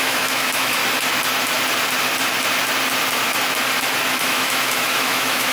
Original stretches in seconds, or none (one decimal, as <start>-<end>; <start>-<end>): 0.8-4.1